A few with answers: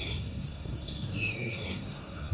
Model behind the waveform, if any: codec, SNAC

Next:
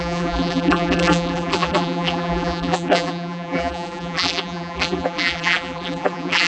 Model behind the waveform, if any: vocoder, BigVGAN v2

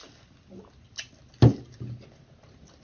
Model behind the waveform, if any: none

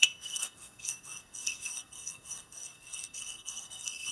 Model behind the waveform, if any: codec, SNAC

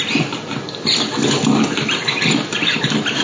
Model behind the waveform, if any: none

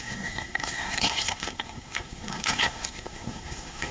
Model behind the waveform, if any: codec, SNAC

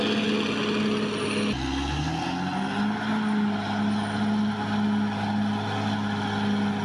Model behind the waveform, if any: none